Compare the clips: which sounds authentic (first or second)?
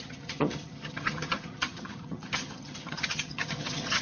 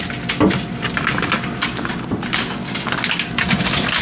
second